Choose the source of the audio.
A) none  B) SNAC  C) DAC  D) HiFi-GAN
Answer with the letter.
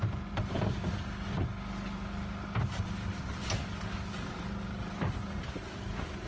A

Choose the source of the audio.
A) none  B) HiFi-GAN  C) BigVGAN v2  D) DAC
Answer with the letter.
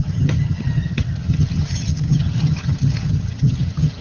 B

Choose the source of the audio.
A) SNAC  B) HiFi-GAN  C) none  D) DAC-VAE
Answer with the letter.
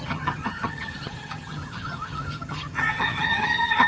B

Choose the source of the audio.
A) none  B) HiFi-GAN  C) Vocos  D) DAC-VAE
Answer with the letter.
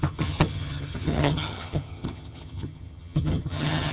B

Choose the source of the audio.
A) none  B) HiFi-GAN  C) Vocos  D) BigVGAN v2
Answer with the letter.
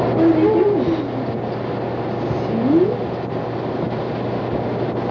A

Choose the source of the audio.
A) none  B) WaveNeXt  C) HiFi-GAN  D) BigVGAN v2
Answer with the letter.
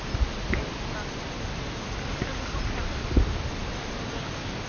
A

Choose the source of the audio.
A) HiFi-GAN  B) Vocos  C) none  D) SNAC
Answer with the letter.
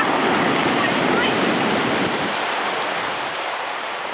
C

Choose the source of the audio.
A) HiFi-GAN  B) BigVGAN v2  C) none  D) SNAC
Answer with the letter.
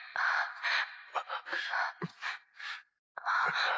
C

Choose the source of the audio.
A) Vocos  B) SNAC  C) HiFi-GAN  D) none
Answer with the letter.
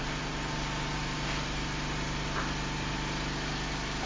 D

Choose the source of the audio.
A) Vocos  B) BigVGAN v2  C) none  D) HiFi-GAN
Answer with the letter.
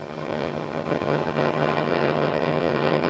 D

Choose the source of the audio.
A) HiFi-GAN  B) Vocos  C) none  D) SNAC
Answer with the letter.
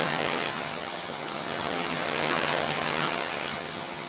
A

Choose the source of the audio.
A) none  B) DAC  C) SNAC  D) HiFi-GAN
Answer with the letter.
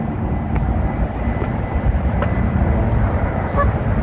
A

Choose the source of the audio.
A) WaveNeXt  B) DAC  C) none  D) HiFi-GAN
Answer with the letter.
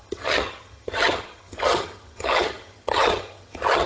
D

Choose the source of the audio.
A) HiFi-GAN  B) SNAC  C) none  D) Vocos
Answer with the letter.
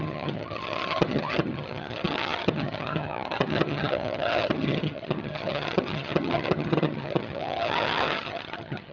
A